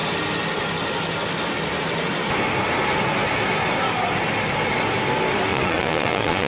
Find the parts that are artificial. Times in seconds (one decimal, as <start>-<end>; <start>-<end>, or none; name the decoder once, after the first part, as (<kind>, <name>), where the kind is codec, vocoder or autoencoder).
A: 5.5-6.5 (vocoder, Vocos)